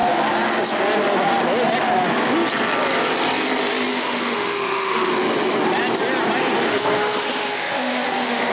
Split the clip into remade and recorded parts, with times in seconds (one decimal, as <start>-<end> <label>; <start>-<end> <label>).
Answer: 0.0-3.9 recorded; 3.9-5.1 remade; 5.1-6.7 recorded; 6.7-8.5 remade